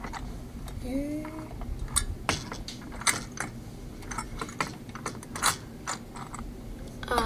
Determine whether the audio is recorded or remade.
recorded